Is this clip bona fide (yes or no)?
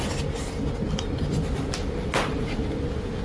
yes